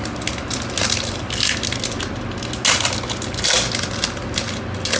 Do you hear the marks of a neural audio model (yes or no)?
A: no